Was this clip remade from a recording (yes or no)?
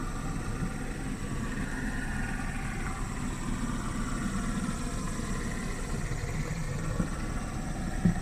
no